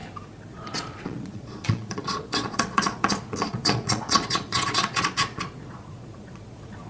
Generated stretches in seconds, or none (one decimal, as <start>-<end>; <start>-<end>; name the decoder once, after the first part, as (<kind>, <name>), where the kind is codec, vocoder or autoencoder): 0.5-6.9 (vocoder, Vocos)